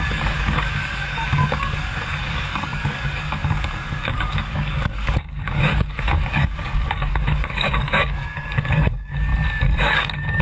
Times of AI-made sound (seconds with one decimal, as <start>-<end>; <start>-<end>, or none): 0.0-9.3; 9.8-10.4